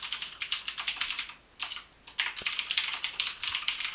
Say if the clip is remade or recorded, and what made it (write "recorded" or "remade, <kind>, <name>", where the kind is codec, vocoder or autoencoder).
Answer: recorded